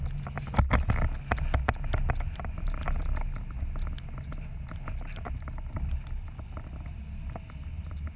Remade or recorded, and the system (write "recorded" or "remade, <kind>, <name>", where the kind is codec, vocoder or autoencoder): recorded